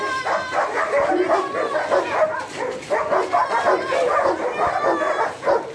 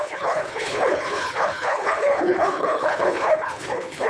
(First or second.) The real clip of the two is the first